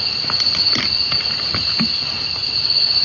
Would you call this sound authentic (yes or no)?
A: yes